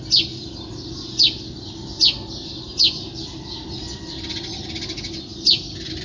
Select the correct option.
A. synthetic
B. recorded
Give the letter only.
B